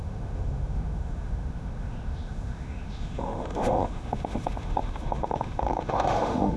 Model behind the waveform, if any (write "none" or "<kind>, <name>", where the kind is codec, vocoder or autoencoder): autoencoder, DAC-VAE